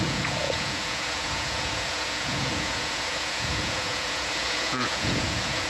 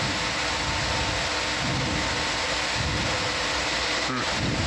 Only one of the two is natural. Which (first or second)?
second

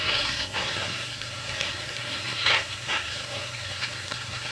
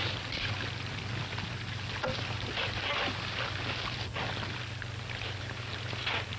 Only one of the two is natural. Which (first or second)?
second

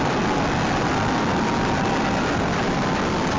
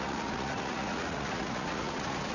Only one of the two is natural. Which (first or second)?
first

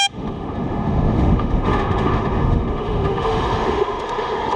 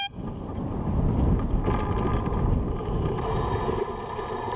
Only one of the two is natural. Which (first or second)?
second